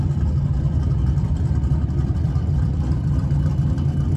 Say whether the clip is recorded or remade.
remade